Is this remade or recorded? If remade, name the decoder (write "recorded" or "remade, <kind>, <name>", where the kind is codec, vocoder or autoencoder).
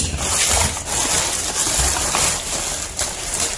recorded